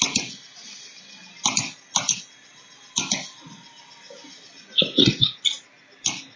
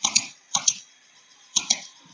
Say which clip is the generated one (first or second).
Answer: second